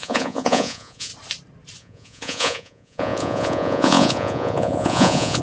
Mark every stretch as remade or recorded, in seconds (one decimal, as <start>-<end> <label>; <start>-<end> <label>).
0.0-1.1 remade; 1.1-1.8 recorded; 1.8-5.4 remade